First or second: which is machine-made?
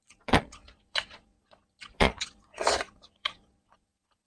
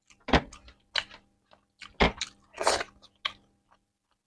first